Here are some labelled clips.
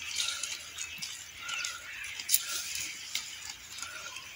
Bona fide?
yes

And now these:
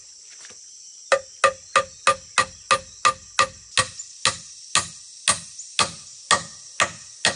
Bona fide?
yes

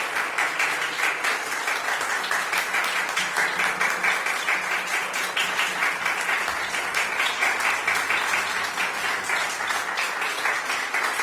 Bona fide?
yes